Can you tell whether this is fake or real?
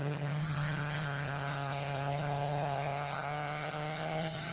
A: fake